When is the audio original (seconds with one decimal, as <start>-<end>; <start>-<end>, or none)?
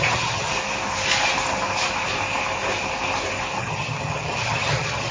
0.5-3.6